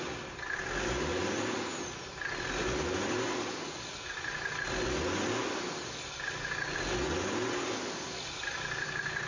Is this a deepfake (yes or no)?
no